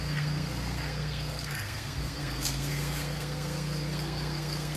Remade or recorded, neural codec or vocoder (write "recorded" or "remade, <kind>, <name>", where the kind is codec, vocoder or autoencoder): remade, codec, SNAC